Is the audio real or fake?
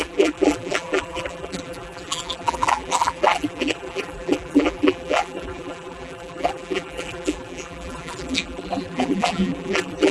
fake